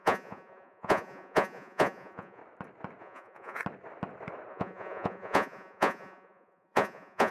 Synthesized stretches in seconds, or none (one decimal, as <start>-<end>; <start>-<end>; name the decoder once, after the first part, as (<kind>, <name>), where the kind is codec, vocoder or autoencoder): 0.0-2.4 (vocoder, Vocos); 3.0-3.6; 4.5-7.3